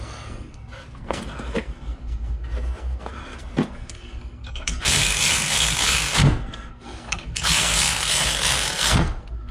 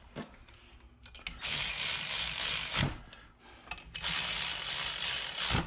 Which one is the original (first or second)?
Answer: second